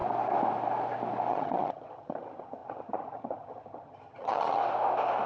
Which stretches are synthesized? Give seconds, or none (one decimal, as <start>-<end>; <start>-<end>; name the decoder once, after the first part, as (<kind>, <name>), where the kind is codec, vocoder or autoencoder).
1.3-4.6 (vocoder, HiFi-GAN)